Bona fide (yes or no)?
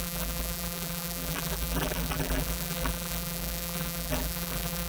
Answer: no